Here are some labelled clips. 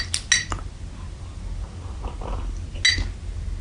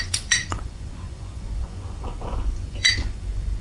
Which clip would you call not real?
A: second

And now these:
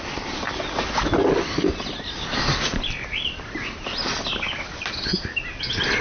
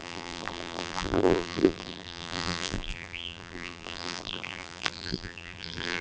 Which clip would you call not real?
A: second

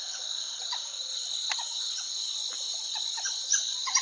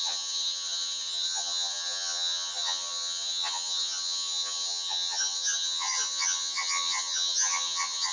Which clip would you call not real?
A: second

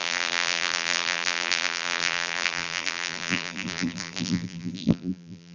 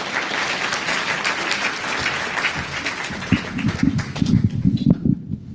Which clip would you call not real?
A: first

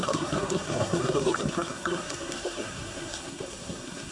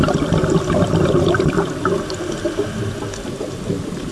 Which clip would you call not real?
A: first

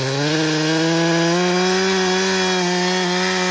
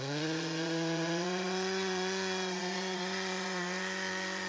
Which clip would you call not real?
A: second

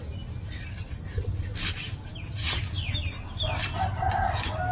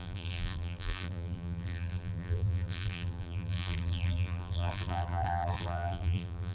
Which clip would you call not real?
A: second